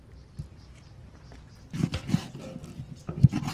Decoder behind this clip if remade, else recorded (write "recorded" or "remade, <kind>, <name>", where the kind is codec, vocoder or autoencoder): recorded